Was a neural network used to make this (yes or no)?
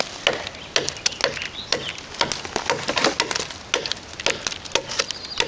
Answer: no